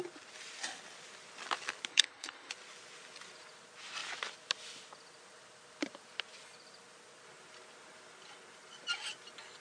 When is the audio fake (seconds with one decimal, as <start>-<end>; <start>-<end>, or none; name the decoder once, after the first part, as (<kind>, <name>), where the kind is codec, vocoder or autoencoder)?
1.9-2.5 (codec, HILCodec)